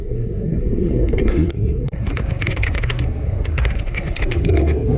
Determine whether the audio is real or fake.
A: fake